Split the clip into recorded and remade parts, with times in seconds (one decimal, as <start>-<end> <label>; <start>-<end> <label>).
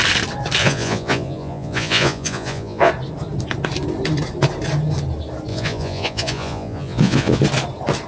0.0-0.6 recorded; 0.6-2.9 remade; 2.9-5.5 recorded; 5.5-7.4 remade; 7.4-8.1 recorded